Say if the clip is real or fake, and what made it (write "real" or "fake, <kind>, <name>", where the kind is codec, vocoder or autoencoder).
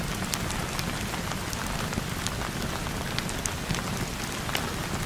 real